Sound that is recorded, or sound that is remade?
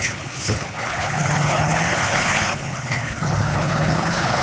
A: remade